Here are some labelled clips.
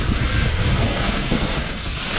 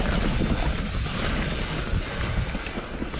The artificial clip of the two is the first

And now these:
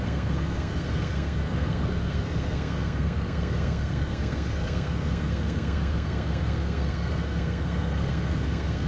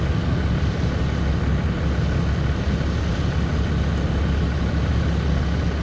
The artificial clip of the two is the first